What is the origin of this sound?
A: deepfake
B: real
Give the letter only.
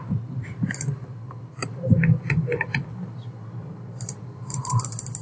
B